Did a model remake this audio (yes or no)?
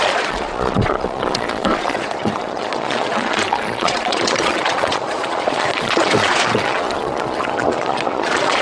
yes